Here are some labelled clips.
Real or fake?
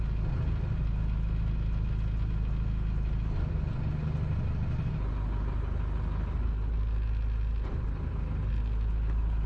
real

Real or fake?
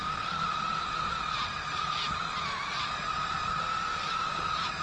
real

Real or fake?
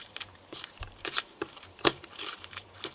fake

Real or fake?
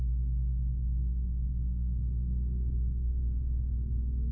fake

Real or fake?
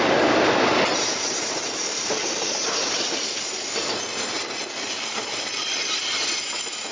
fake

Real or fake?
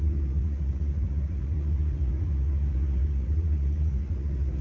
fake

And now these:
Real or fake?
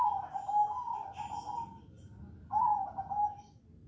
real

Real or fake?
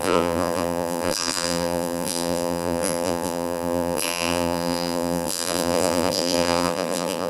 fake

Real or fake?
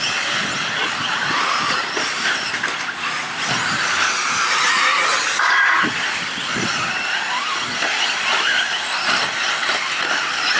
real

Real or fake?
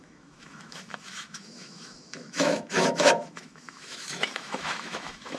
fake